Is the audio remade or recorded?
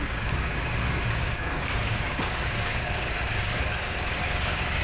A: remade